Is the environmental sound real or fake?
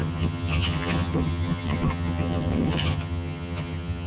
fake